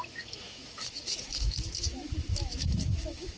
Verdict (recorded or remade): remade